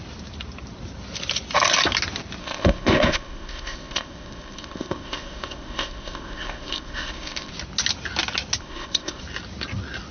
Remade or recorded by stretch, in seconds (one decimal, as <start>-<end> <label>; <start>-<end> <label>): 0.0-2.4 recorded; 2.4-7.5 remade; 7.5-8.6 recorded; 8.6-9.2 remade; 9.2-10.1 recorded